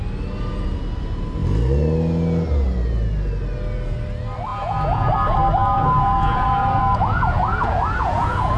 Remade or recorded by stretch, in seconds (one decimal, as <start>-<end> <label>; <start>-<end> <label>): 0.0-4.5 recorded; 4.5-5.1 remade; 5.1-5.6 recorded; 5.6-8.6 remade